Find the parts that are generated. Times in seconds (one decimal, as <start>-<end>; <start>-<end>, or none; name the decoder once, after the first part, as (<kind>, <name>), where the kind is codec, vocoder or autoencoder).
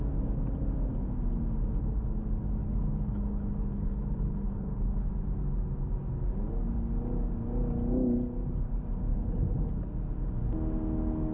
2.6-5.1 (codec, HILCodec); 9.1-9.6